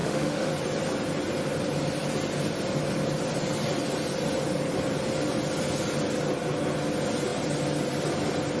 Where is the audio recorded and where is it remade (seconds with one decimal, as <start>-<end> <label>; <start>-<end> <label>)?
0.0-0.5 remade; 0.5-8.6 recorded